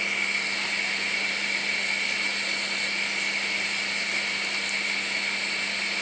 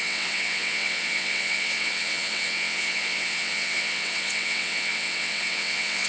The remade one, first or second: second